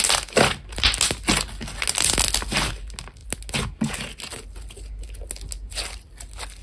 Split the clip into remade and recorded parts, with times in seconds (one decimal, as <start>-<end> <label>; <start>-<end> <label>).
0.0-6.6 recorded